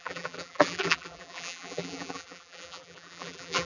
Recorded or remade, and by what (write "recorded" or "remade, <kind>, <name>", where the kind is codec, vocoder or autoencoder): remade, vocoder, BigVGAN v2